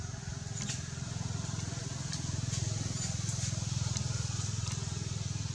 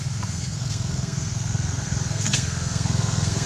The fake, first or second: second